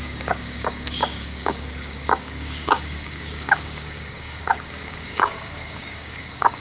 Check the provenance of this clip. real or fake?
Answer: fake